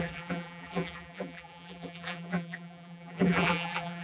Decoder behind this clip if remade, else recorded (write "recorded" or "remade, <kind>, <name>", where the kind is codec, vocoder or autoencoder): remade, vocoder, BigVGAN v2